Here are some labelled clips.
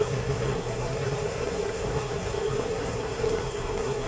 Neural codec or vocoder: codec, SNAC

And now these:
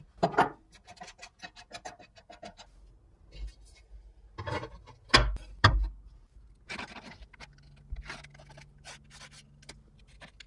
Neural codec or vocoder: none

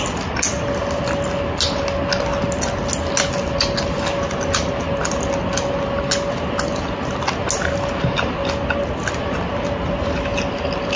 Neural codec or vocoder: none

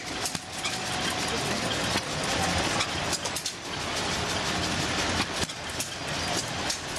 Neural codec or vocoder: none